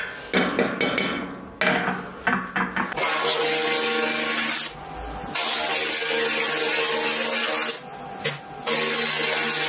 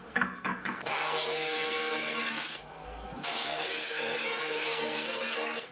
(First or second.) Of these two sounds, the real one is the first